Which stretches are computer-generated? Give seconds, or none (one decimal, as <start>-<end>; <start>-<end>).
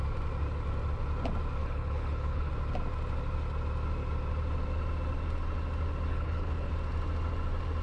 1.6-2.5; 6.1-6.7